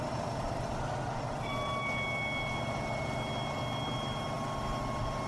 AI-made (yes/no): no